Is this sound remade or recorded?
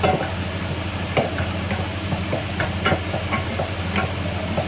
recorded